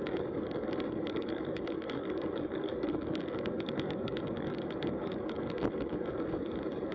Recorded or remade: remade